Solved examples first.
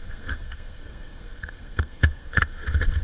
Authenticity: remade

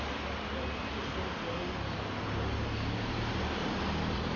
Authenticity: recorded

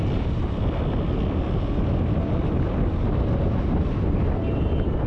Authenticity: recorded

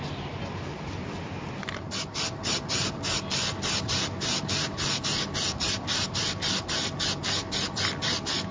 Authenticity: recorded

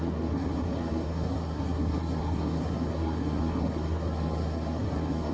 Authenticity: remade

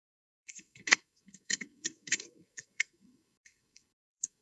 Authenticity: remade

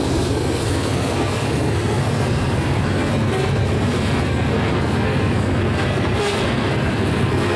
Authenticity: remade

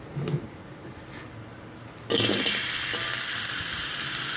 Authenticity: recorded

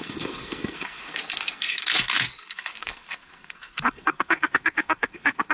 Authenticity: remade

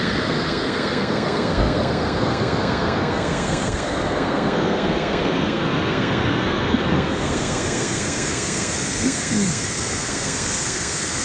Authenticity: remade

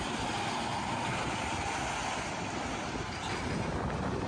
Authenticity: recorded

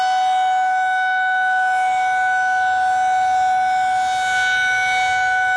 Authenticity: recorded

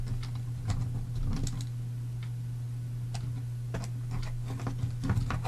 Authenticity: recorded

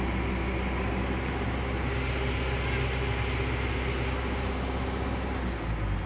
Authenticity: recorded